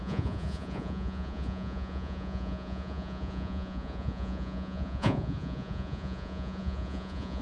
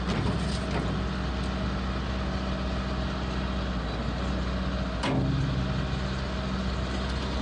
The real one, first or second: second